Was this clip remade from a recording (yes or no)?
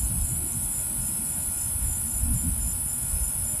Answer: no